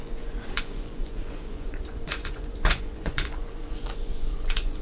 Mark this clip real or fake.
fake